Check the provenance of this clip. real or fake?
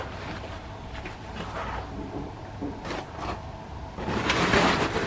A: real